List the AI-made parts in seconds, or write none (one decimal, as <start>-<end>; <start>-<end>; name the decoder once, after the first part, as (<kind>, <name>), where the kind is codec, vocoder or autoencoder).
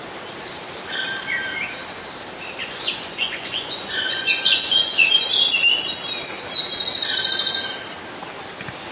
2.6-5.1 (vocoder, Vocos)